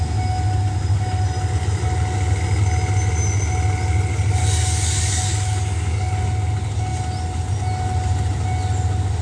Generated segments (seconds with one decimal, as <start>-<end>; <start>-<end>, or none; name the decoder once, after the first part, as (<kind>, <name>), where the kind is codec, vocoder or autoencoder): 4.4-6.1 (codec, DAC)